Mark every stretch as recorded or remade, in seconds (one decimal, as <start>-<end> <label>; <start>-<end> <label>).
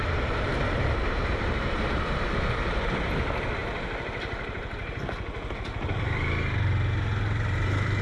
0.0-8.0 recorded